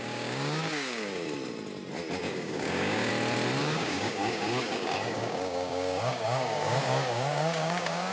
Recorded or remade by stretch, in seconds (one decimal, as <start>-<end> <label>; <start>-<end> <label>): 0.0-1.1 remade; 1.1-2.2 recorded; 2.2-3.1 remade; 3.1-3.6 recorded; 3.6-8.1 remade